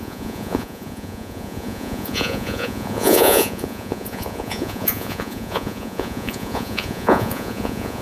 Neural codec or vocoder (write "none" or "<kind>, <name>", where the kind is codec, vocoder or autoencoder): vocoder, Vocos